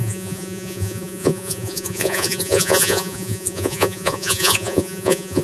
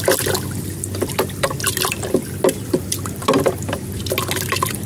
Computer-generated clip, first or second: first